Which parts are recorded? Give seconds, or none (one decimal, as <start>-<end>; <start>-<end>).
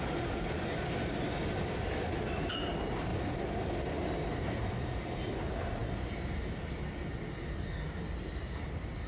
0.0-9.1